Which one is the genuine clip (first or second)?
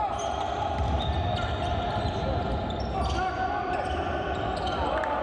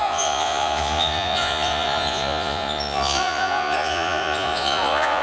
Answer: first